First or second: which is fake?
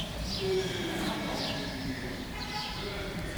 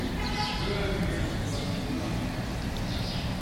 first